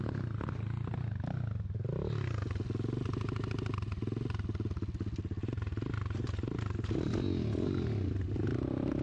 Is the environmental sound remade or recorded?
recorded